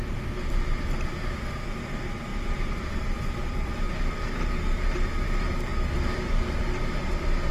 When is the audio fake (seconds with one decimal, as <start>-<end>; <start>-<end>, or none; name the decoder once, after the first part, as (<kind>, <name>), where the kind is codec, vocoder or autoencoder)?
2.3-3.7 (vocoder, BigVGAN v2)